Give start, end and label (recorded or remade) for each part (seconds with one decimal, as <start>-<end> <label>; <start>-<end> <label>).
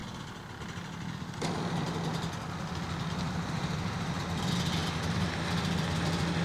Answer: 0.0-6.4 recorded